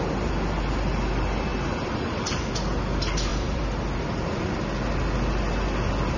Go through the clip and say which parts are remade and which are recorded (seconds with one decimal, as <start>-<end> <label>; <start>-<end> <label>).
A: 0.0-1.5 recorded; 1.5-2.5 remade; 2.5-3.3 recorded; 3.3-4.4 remade; 4.4-6.2 recorded